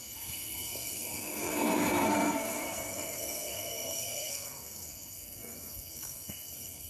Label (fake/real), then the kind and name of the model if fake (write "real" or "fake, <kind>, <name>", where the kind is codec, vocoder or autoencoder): fake, codec, SNAC